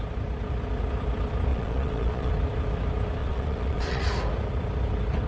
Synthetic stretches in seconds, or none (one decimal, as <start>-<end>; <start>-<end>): 1.5-2.3; 3.2-4.1